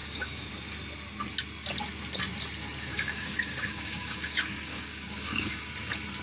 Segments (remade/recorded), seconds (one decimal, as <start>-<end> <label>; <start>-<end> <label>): 0.0-0.5 remade; 0.5-2.9 recorded; 2.9-5.7 remade; 5.7-6.2 recorded